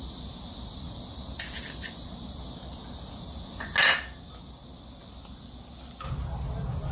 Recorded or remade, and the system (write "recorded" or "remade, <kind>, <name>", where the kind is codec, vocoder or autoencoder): recorded